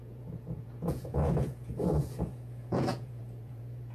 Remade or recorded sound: remade